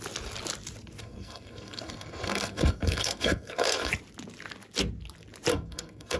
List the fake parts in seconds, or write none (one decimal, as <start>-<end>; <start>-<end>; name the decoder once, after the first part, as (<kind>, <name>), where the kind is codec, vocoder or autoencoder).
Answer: 1.0-3.9 (codec, SNAC); 5.5-6.2